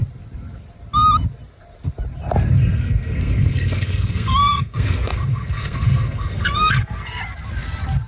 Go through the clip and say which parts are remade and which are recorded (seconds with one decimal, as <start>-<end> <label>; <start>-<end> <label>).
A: 0.0-2.6 recorded; 2.6-7.2 remade; 7.2-8.1 recorded